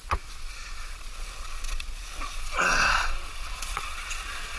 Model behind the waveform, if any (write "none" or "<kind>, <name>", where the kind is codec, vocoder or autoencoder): vocoder, Vocos